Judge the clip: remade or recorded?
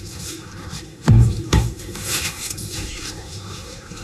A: remade